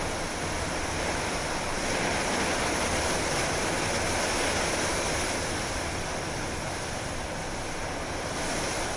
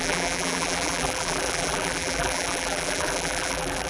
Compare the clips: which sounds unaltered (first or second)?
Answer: first